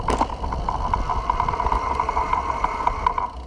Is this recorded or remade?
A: recorded